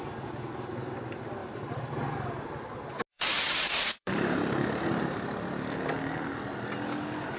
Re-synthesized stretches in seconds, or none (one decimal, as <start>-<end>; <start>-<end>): 1.4-1.9; 3.1-4.8